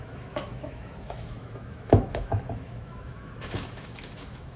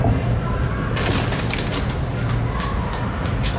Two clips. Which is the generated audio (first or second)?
first